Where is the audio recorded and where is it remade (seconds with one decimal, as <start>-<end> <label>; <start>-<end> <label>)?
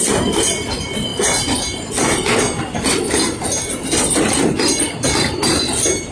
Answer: 0.0-6.1 recorded